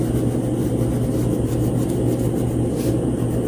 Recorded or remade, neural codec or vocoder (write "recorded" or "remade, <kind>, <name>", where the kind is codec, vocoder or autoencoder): recorded